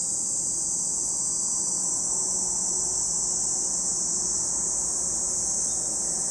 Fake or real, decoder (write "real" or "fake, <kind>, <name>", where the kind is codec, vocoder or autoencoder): real